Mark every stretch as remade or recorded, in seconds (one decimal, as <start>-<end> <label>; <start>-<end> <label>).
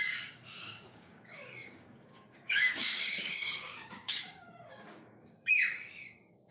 0.0-6.5 remade